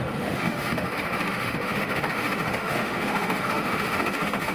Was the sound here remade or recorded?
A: remade